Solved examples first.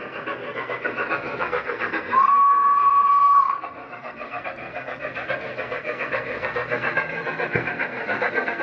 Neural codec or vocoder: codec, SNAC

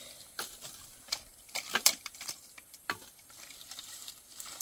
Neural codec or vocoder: vocoder, BigVGAN v2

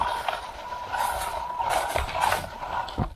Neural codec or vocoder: none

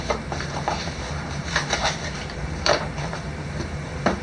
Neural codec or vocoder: vocoder, BigVGAN v2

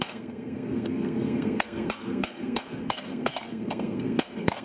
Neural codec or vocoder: codec, SNAC